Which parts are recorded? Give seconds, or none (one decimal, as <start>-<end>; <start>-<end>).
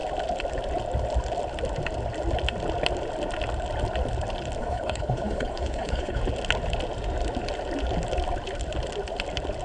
0.0-4.6; 6.2-9.6